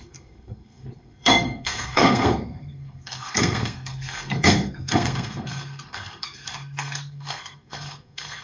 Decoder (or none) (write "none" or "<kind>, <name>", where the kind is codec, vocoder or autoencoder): codec, SNAC